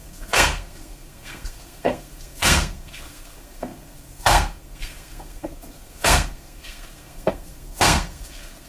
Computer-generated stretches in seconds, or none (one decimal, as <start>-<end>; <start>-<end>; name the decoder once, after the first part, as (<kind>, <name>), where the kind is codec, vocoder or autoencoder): 0.0-8.7 (codec, SNAC)